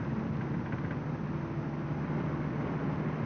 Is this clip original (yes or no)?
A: yes